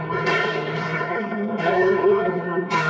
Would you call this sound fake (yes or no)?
yes